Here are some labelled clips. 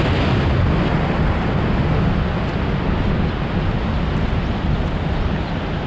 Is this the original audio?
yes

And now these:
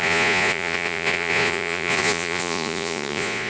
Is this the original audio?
no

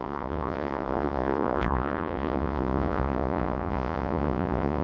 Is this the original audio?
no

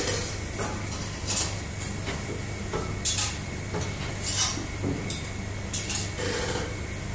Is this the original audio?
yes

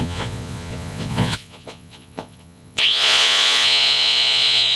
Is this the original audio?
no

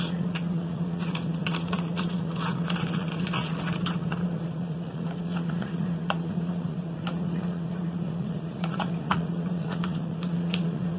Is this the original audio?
no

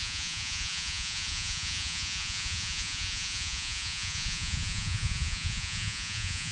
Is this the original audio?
no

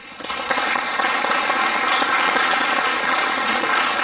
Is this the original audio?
no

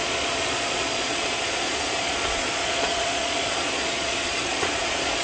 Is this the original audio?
no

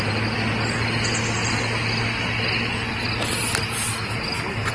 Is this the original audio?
yes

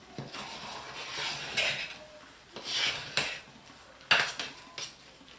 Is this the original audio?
yes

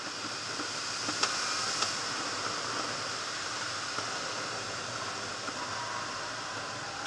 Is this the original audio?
yes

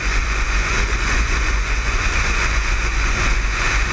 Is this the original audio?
no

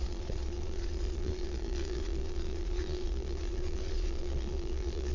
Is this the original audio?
no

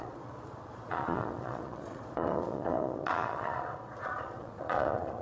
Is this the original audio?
no